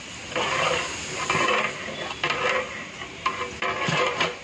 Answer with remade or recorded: recorded